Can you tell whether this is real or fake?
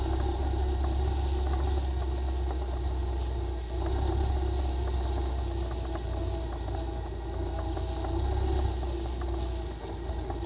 real